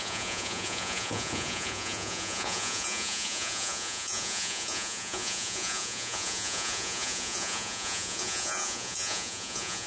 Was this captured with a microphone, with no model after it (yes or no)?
no